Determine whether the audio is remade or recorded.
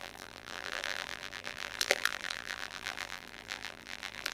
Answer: remade